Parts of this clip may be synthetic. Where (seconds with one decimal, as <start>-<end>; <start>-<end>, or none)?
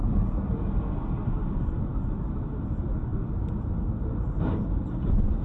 none